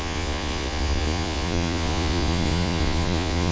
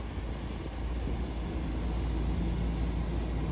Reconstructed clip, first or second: first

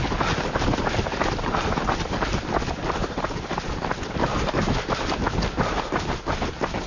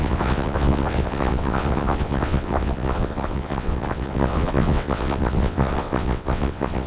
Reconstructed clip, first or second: second